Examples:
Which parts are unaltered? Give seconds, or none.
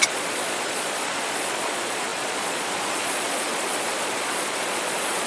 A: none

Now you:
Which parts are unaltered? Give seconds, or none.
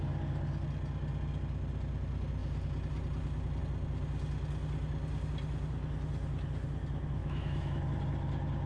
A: 0.0-7.2; 7.8-8.7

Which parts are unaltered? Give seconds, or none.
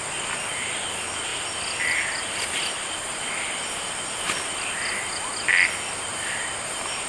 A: 0.0-7.1